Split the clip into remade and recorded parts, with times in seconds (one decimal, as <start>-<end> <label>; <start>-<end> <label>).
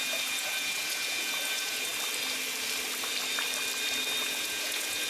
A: 0.0-1.9 remade; 1.9-4.2 recorded; 4.2-5.1 remade